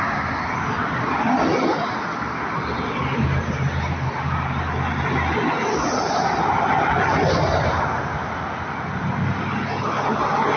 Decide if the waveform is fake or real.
real